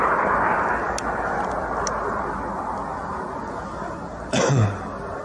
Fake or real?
real